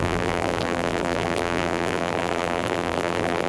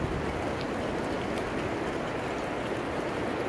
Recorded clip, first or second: second